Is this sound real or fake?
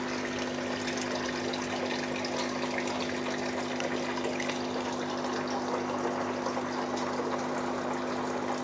real